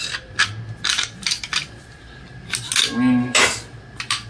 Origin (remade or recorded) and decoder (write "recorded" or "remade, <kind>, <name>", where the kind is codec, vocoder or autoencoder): recorded